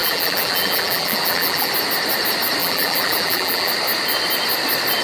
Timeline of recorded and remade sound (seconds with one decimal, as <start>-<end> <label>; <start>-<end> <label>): 0.0-1.7 remade; 1.7-2.6 recorded; 2.6-3.7 remade; 3.7-5.0 recorded